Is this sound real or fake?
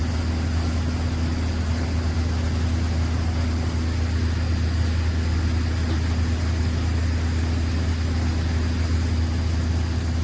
real